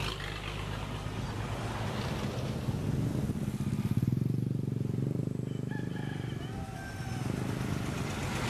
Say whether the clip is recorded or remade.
recorded